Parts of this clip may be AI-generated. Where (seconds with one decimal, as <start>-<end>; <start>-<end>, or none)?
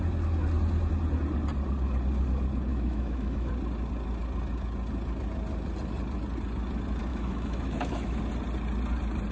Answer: 2.7-3.5; 7.1-8.2